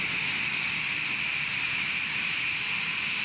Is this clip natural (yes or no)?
yes